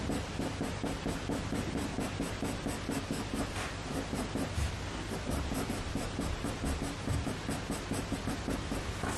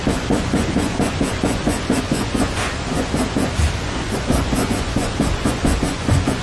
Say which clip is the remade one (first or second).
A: second